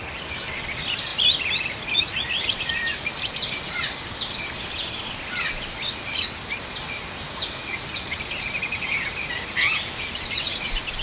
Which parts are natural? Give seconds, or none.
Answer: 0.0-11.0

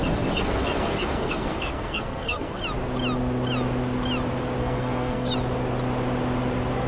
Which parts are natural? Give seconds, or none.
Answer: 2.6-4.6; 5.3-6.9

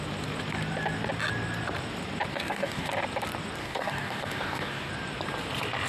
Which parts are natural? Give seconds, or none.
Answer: 0.0-2.3; 2.9-3.6; 4.9-5.9

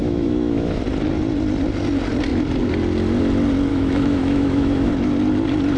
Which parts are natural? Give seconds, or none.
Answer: 0.8-3.7; 4.9-5.8